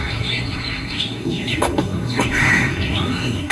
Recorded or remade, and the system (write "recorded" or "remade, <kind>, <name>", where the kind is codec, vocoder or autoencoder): remade, codec, SNAC